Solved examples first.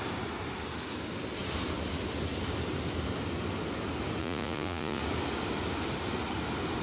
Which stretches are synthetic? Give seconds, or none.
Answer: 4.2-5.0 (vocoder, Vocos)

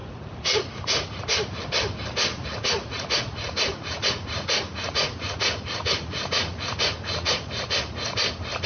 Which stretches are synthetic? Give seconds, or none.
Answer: 0.0-1.2 (vocoder, Vocos); 2.3-7.5

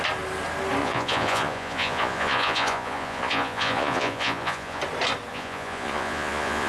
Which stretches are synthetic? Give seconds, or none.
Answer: 0.8-4.8 (vocoder, Vocos); 5.3-6.7

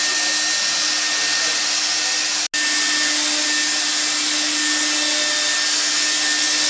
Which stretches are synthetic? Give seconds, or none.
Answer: none

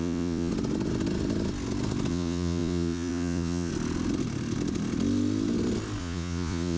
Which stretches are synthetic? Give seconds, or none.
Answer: 0.0-0.5 (vocoder, Vocos); 2.1-3.7; 6.0-6.8

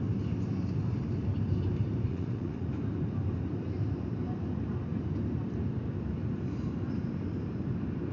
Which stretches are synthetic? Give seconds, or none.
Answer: 2.1-2.7 (vocoder, Vocos)

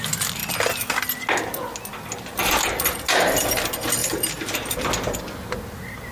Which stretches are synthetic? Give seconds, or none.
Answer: none

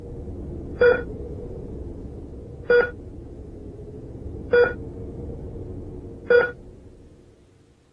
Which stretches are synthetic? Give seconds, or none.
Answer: 0.7-2.2 (vocoder, Vocos); 3.2-4.5